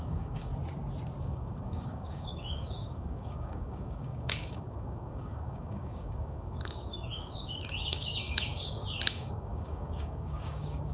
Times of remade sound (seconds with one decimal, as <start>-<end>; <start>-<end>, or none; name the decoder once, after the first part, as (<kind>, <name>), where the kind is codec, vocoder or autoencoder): 0.0-0.5 (codec, DAC); 1.2-10.9